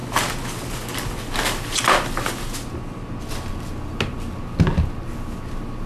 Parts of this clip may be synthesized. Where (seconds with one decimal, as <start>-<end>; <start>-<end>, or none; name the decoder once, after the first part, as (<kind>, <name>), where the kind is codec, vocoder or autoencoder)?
none